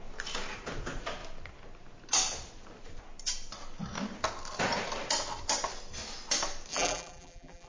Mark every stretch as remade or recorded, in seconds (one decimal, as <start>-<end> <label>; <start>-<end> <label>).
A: 0.0-6.7 recorded; 6.7-7.7 remade